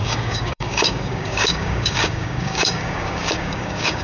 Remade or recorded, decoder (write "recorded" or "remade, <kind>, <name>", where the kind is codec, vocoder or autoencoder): remade, codec, DAC